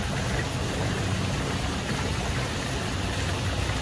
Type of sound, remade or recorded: recorded